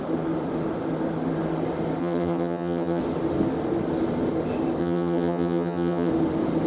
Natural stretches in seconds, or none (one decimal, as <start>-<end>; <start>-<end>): 0.0-2.0; 3.0-4.8; 6.1-6.7